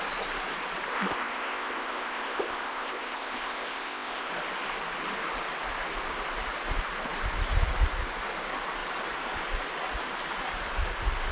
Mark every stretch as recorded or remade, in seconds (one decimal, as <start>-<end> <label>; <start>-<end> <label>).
0.0-0.9 recorded; 0.9-4.3 remade; 4.3-11.3 recorded